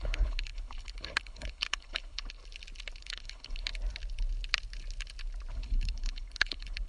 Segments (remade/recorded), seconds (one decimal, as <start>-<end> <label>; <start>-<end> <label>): 0.0-2.4 remade; 2.4-3.0 recorded; 3.0-3.7 remade; 3.7-5.5 recorded; 5.5-6.9 remade